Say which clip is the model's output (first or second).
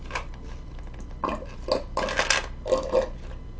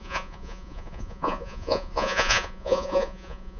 second